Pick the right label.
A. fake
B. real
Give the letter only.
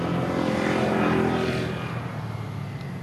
B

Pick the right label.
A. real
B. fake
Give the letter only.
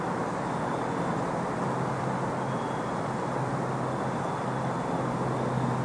A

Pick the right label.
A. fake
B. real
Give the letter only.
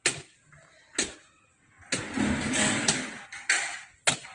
B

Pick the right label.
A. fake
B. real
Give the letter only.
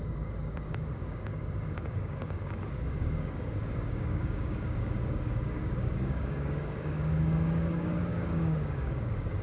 A